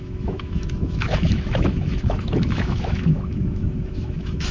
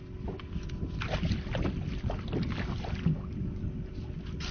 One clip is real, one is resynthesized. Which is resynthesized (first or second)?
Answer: first